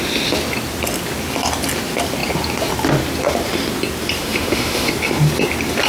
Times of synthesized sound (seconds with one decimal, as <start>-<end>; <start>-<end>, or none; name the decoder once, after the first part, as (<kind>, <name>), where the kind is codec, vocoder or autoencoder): 4.2-4.9 (autoencoder, DAC-VAE)